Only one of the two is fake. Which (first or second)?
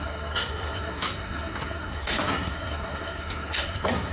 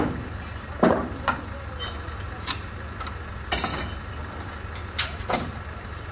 first